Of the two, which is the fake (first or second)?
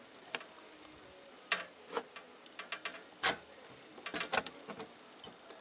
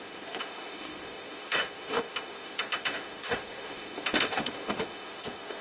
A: second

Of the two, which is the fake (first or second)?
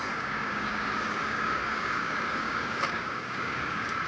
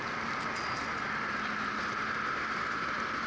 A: first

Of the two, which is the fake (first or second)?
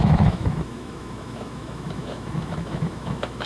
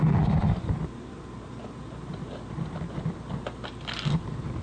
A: first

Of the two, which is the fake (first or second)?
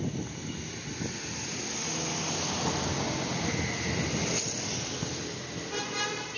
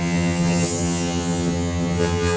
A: second